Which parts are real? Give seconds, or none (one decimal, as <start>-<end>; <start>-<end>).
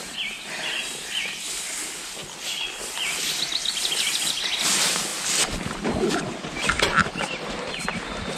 0.0-8.4